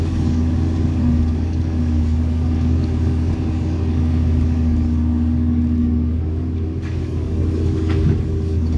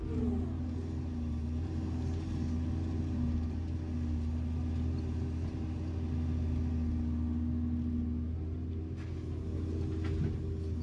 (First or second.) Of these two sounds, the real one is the second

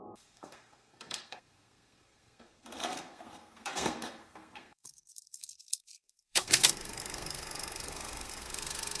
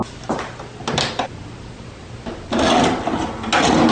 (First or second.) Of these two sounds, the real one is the second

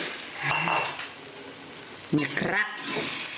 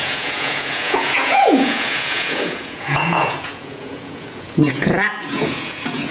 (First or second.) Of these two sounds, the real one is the first